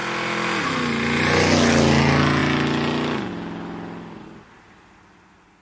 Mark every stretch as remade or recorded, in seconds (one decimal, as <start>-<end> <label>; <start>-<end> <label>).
0.0-5.6 recorded